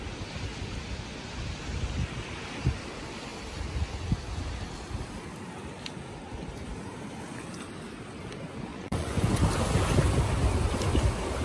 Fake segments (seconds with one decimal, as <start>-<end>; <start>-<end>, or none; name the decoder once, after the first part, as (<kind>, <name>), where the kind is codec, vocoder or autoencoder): 8.7-9.4 (vocoder, Vocos)